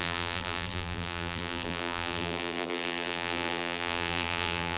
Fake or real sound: fake